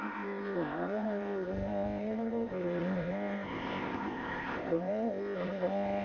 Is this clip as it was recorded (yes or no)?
no